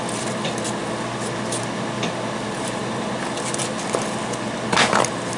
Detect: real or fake real